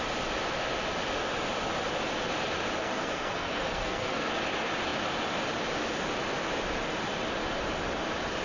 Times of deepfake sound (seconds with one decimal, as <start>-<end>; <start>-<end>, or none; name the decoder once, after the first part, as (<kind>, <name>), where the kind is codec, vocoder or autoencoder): 2.8-4.3 (codec, SNAC)